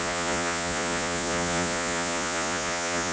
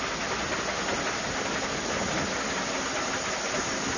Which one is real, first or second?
second